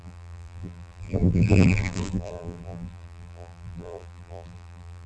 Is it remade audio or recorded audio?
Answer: remade